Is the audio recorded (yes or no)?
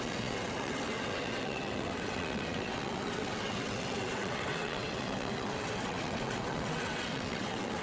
no